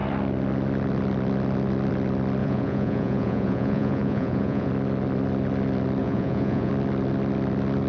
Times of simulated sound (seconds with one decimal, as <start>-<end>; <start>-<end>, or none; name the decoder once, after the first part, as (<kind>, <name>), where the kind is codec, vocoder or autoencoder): 2.4-4.7 (vocoder, Vocos); 6.0-6.7

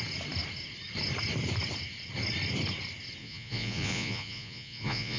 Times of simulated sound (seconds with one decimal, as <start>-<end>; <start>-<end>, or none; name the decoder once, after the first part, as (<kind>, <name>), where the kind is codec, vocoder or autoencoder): 3.2-5.2 (vocoder, Vocos)

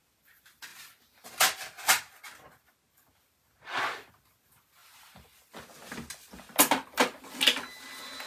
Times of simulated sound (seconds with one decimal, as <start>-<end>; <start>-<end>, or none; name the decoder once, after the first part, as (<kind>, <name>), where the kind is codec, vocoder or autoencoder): none

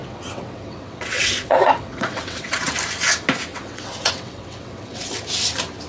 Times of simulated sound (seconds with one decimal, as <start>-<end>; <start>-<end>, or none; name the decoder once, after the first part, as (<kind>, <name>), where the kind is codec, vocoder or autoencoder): 0.0-2.7 (vocoder, WaveNeXt); 3.5-5.1